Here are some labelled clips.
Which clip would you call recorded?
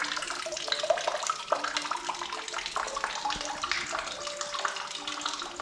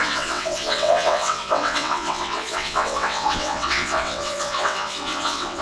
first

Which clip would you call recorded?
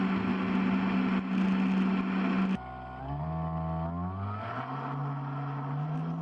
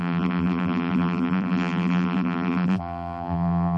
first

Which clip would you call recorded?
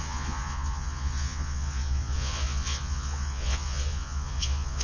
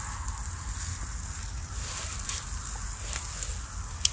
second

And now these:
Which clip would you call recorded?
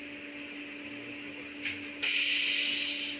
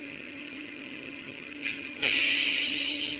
first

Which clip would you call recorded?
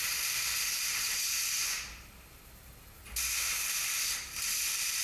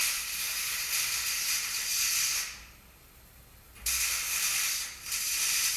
second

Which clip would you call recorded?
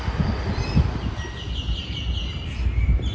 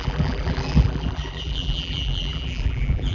first